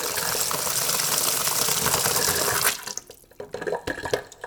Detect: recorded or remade recorded